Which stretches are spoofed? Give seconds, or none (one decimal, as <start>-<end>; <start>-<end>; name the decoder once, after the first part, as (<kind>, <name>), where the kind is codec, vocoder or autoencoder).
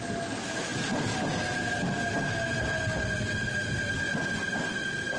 none